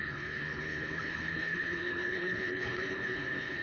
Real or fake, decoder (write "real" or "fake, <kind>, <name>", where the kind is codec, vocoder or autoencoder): fake, codec, HILCodec